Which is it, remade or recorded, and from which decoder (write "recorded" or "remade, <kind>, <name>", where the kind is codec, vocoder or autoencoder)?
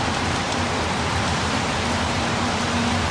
remade, vocoder, BigVGAN v2